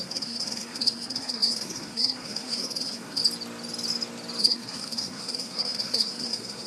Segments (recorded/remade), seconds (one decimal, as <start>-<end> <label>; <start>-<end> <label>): 0.0-3.2 remade; 3.2-4.4 recorded; 4.4-6.7 remade